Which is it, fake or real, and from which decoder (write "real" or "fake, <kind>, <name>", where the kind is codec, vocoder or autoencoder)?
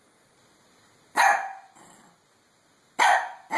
real